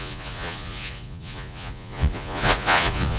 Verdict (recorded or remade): remade